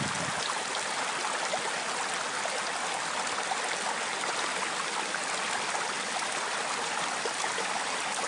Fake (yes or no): no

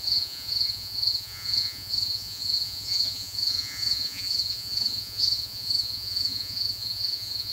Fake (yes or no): yes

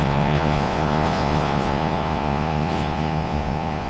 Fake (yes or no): yes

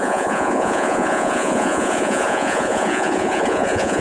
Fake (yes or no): yes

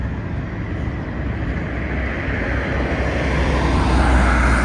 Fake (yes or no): no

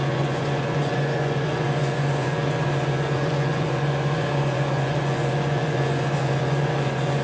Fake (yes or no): yes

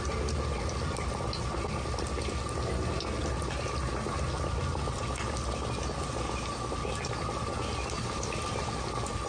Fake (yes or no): no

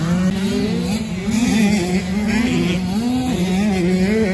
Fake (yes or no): no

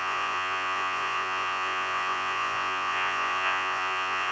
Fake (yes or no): yes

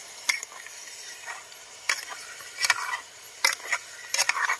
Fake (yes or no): no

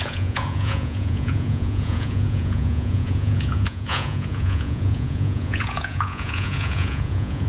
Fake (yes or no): yes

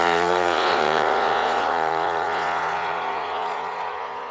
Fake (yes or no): yes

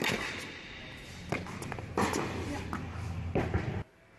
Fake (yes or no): no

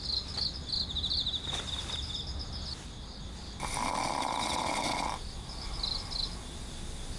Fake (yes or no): no